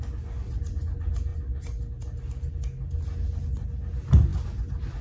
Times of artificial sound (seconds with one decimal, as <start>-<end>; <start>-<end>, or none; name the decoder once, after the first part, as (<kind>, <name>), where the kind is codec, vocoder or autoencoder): none